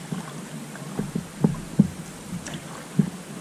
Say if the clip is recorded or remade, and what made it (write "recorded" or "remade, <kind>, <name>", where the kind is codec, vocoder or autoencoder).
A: recorded